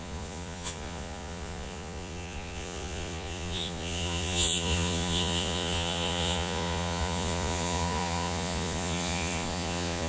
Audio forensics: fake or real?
fake